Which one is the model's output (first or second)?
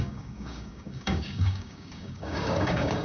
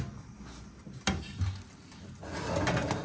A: first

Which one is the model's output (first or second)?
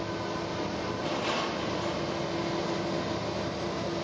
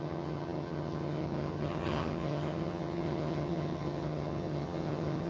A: second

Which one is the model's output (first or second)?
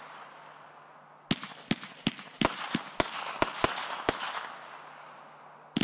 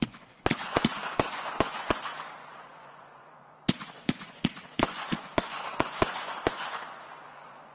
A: second